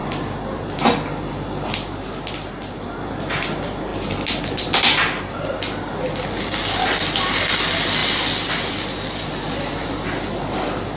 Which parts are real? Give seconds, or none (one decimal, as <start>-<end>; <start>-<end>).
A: 0.0-8.0; 8.5-11.0